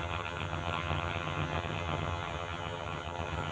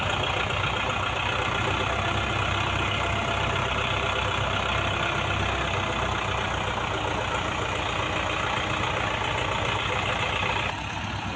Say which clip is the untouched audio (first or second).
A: second